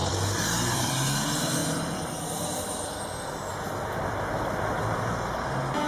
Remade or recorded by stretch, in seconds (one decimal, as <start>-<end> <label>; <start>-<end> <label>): 0.0-0.9 remade; 0.9-1.6 recorded; 1.6-2.9 remade; 2.9-5.9 recorded